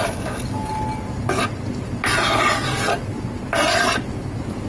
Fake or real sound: real